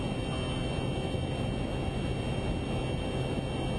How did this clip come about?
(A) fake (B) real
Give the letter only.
B